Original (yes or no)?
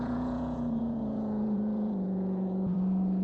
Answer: no